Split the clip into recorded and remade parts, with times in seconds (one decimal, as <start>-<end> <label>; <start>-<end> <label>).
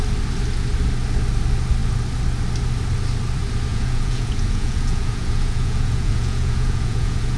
0.0-3.7 recorded; 3.7-7.4 remade